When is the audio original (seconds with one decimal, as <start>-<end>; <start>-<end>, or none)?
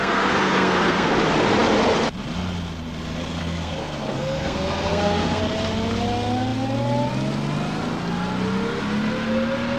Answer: 1.1-3.4; 5.4-9.8